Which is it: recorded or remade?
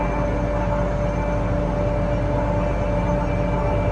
recorded